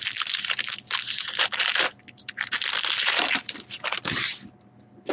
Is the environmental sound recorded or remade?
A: recorded